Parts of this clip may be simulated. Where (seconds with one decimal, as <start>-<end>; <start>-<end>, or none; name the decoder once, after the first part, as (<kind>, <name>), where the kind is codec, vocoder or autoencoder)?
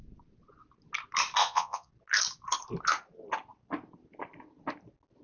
1.4-1.9 (vocoder, Vocos)